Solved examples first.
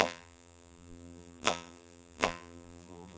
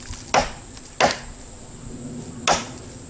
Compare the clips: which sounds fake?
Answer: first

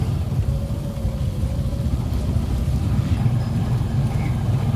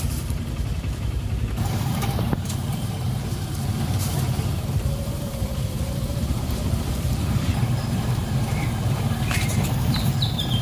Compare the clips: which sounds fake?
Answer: second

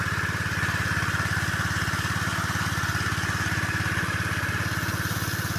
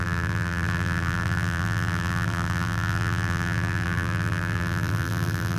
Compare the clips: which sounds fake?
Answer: second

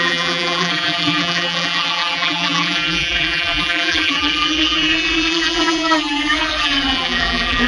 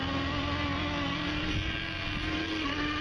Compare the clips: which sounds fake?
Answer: first